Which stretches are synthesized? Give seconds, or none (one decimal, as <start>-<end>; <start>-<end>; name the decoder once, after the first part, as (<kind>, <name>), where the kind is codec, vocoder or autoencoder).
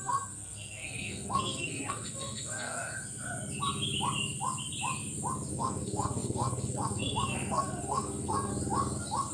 0.0-2.9 (codec, SNAC); 5.5-8.5